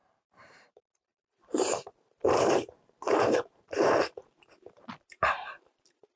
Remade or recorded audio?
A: remade